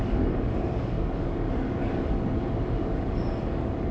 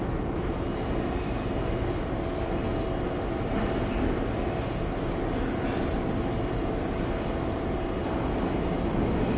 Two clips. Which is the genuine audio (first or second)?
second